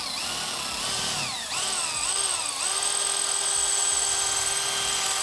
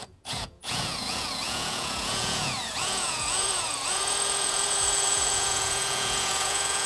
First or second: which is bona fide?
first